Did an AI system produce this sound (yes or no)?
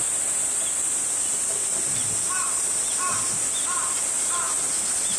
no